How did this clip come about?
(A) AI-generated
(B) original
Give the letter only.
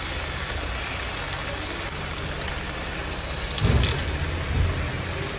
B